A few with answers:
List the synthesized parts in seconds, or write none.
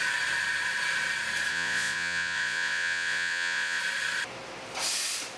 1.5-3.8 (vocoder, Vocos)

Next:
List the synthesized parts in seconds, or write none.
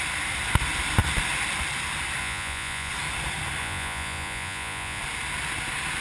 2.2-2.9 (vocoder, Vocos); 3.6-5.0